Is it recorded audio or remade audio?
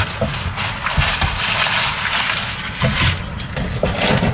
recorded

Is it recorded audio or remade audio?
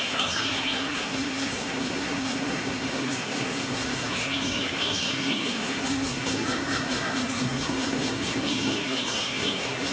remade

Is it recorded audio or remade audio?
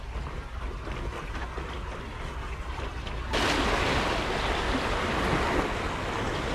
recorded